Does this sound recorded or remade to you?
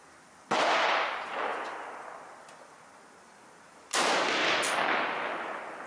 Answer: recorded